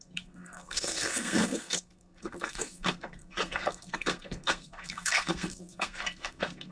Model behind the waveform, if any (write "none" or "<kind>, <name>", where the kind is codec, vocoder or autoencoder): codec, SNAC